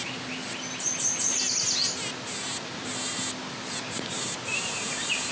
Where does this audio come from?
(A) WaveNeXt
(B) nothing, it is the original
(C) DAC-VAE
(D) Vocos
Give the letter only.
B